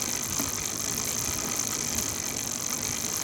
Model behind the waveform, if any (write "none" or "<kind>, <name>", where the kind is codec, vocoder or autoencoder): none